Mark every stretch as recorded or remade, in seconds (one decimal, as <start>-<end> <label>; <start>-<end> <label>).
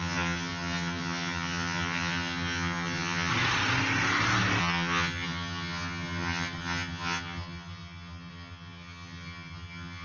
0.0-3.3 remade; 3.3-4.6 recorded; 4.6-10.0 remade